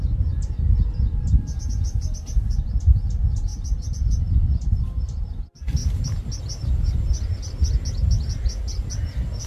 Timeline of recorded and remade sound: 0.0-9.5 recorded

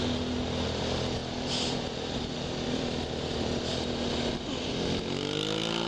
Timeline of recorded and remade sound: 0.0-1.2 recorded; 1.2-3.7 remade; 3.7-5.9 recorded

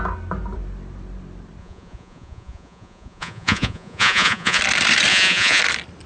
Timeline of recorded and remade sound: 0.0-1.6 recorded; 1.6-4.6 remade; 4.6-5.1 recorded; 5.1-5.6 remade; 5.6-6.1 recorded